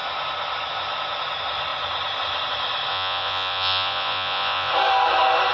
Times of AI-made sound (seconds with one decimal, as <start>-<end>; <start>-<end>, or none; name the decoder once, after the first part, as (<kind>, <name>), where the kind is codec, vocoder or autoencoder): 2.9-4.7 (vocoder, Vocos)